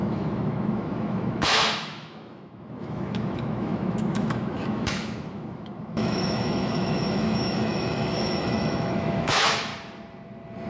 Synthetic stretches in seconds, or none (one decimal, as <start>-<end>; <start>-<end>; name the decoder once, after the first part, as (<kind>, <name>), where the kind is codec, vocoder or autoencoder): 0.0-9.7 (autoencoder, DAC-VAE)